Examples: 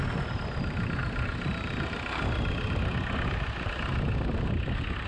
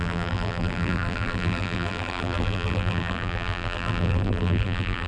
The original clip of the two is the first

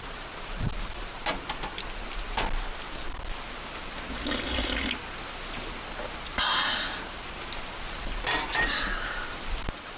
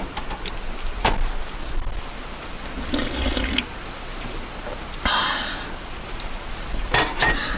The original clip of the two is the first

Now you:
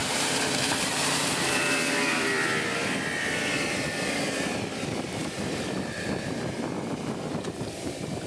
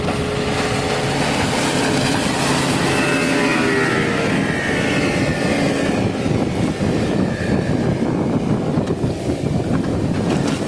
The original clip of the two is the second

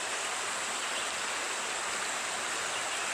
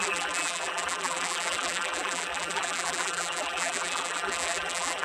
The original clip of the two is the first